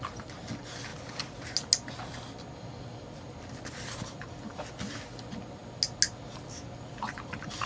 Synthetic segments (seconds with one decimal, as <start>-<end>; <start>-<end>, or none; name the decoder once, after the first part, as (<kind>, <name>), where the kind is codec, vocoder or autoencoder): none